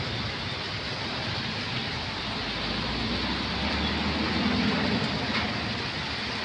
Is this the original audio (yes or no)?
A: yes